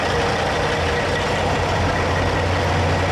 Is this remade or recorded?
recorded